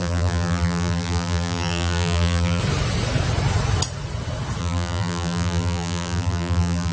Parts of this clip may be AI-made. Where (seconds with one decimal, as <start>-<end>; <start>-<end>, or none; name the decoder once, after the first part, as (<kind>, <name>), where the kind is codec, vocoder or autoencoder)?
0.0-2.6 (vocoder, BigVGAN v2); 4.6-6.9